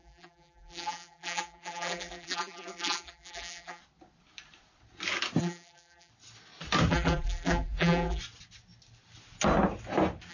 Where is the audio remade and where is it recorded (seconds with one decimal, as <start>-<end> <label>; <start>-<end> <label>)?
0.0-3.8 remade; 3.8-5.4 recorded; 5.4-6.1 remade; 6.1-6.9 recorded; 6.9-8.2 remade; 8.2-10.3 recorded